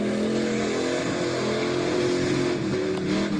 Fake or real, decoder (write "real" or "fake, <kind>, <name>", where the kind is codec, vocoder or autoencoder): real